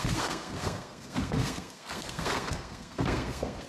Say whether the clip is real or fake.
fake